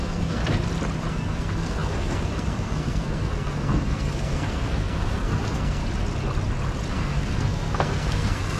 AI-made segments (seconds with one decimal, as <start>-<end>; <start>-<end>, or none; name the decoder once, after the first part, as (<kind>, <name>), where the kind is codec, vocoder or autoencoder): 0.0-0.4 (codec, SNAC); 1.1-5.8; 6.9-8.6